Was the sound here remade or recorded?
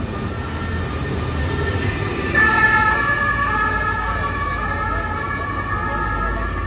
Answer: recorded